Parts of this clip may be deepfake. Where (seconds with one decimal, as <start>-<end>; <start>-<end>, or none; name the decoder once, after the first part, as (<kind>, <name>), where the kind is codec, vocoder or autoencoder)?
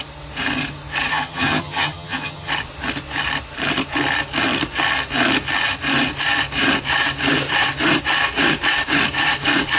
1.1-2.5 (vocoder, HiFi-GAN)